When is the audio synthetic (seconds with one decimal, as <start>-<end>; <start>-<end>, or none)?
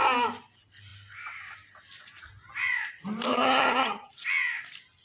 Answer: 3.3-4.1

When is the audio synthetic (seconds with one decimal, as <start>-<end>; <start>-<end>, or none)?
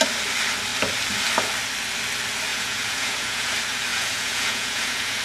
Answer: 2.5-3.5; 3.9-5.2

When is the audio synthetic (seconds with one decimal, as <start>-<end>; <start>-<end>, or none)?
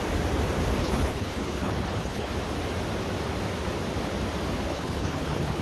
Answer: 0.8-2.3; 4.7-5.6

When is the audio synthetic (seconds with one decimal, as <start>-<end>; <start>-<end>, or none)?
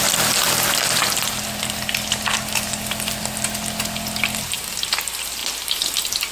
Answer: none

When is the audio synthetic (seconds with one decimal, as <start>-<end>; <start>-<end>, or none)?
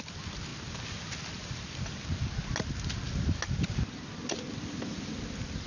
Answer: none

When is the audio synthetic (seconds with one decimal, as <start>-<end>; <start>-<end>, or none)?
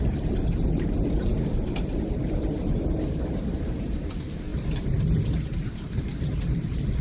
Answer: 0.0-4.5; 5.2-7.0